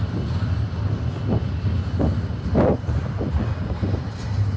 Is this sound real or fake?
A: real